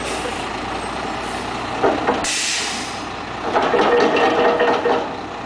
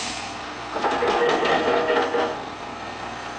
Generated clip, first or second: second